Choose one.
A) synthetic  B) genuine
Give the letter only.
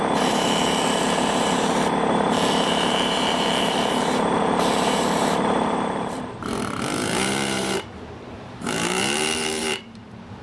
A